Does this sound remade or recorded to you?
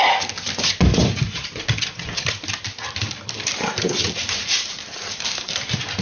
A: recorded